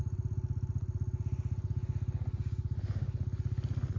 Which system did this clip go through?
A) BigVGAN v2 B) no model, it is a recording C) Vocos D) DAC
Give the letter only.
B